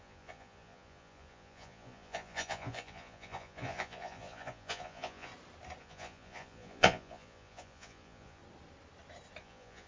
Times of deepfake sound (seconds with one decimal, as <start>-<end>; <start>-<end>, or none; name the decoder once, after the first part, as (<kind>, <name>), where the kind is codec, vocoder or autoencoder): 0.0-5.3 (vocoder, Vocos); 5.8-8.4; 9.4-9.9